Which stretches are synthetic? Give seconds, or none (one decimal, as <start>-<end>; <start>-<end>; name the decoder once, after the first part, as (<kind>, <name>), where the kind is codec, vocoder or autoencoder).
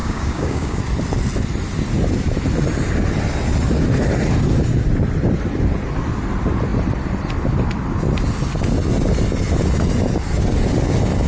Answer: 0.0-0.8 (codec, DAC)